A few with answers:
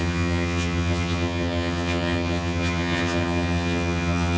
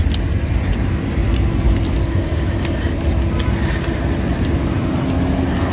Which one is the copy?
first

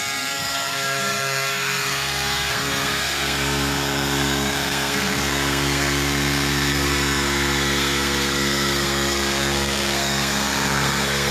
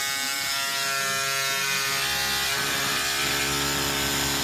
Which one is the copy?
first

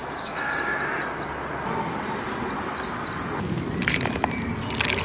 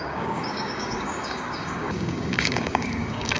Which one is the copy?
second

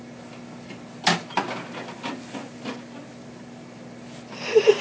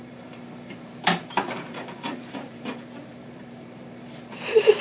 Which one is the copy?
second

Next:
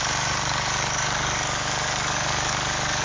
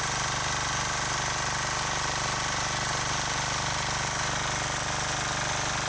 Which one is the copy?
first